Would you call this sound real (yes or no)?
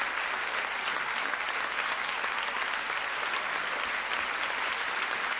yes